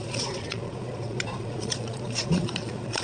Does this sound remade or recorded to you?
remade